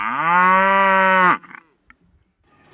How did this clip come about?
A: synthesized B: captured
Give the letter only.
B